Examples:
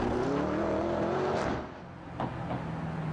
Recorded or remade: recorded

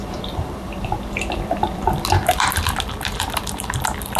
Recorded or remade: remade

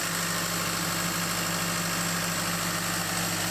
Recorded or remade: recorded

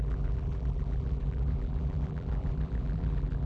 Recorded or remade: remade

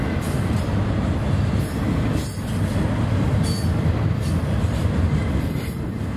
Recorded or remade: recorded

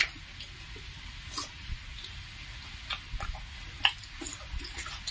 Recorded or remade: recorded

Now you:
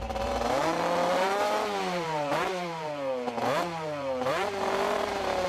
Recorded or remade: remade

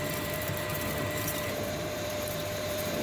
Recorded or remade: remade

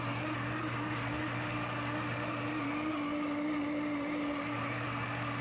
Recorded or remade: recorded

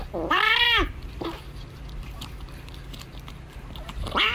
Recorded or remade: remade